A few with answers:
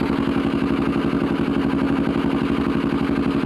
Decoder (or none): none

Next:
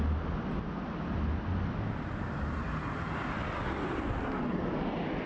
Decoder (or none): none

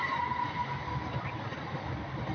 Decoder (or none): none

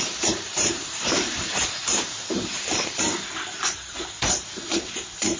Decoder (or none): vocoder, BigVGAN v2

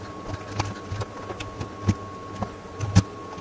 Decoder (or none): none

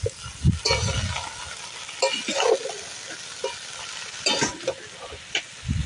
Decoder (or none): none